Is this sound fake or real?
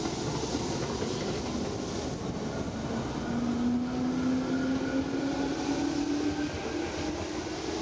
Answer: real